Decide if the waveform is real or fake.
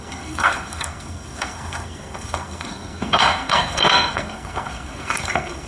fake